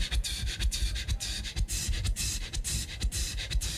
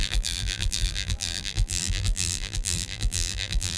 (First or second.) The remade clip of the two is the second